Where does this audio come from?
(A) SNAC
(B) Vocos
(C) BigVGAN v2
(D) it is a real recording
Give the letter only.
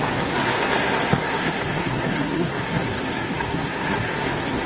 A